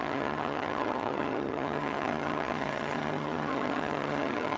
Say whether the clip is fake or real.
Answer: fake